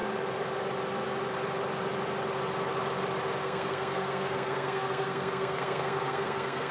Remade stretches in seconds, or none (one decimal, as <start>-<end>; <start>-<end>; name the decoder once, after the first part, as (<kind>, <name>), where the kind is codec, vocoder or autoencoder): 3.4-6.7 (codec, SNAC)